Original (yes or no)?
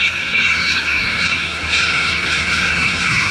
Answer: no